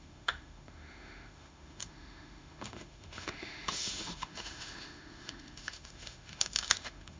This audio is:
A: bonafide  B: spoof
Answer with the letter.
B